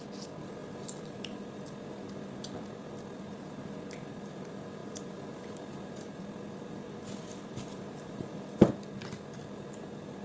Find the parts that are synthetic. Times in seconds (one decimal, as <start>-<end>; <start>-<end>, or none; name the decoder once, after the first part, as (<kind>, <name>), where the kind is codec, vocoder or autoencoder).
none